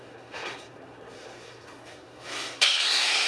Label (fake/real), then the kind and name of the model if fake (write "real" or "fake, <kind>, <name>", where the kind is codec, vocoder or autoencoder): fake, codec, SNAC